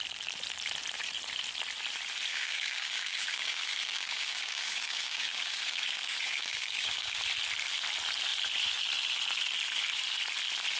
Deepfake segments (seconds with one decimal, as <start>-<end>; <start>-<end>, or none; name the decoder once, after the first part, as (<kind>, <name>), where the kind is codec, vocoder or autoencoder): 2.3-7.2 (codec, DAC)